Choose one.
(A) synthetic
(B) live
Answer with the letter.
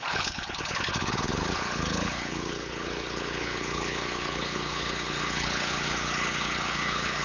A